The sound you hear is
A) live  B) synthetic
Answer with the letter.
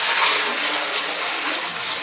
A